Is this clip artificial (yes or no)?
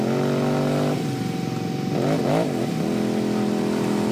no